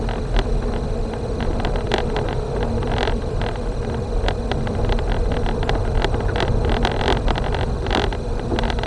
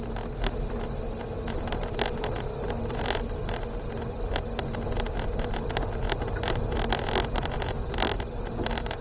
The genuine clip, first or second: second